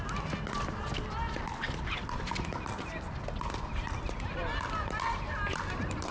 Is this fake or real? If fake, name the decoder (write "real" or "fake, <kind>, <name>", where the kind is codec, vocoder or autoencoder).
real